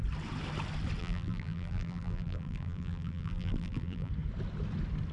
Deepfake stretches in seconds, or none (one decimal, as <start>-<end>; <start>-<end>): 1.0-4.1